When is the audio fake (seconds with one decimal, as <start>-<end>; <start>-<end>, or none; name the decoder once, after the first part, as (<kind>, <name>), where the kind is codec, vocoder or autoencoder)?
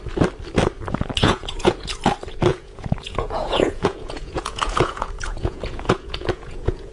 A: 1.2-1.9 (vocoder, Vocos); 2.5-6.9